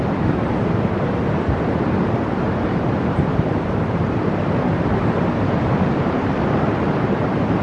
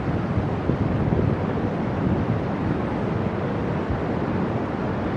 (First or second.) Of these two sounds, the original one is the second